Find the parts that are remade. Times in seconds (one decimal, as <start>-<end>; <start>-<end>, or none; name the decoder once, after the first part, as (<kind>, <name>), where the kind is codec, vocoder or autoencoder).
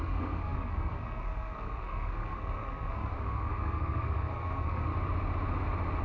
0.0-4.9 (codec, SNAC)